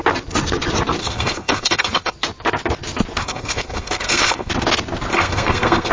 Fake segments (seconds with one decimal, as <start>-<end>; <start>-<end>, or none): 1.0-2.1; 3.2-4.5; 5.1-5.9